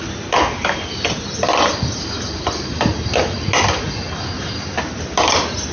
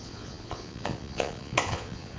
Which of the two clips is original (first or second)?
first